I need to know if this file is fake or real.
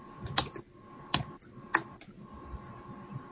real